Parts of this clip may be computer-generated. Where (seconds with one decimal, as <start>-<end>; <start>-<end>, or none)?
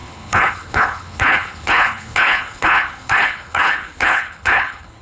0.0-5.0